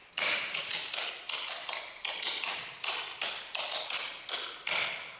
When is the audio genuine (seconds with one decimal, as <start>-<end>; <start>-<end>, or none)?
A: 1.1-1.6; 3.7-5.2